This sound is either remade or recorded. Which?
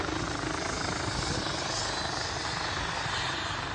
recorded